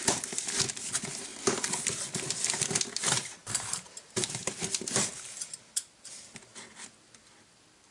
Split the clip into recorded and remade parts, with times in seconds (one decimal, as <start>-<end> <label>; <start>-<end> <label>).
0.0-3.4 recorded; 3.4-4.5 remade; 4.5-7.9 recorded

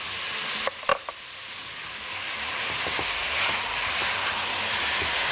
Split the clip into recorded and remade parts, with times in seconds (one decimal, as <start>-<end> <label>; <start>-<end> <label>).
0.0-5.3 recorded

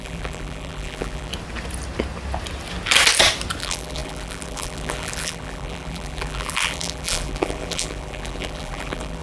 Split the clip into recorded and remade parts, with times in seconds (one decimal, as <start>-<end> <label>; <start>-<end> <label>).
0.0-1.3 remade; 1.3-3.6 recorded; 3.6-9.2 remade